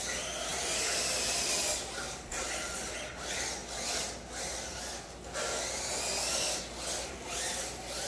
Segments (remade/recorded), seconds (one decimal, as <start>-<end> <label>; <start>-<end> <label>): 0.0-8.1 recorded